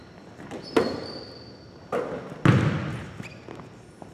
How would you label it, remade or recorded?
recorded